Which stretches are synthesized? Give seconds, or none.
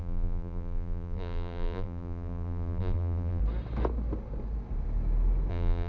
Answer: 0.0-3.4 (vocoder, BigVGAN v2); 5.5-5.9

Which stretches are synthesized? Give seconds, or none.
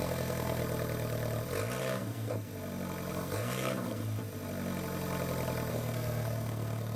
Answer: 0.0-0.6 (codec, SNAC); 1.8-2.5; 3.1-4.0; 5.7-7.0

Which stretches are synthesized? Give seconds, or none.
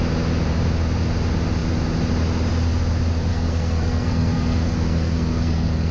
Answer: 3.3-5.9 (codec, SNAC)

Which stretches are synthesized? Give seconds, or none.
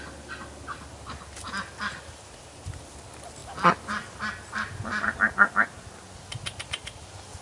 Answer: none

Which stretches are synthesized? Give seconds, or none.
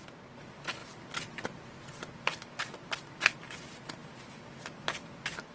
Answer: none